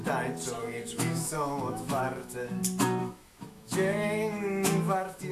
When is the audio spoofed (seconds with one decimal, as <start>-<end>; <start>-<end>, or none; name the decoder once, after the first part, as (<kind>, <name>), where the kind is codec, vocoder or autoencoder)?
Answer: 0.6-2.6 (autoencoder, DAC-VAE); 3.0-5.3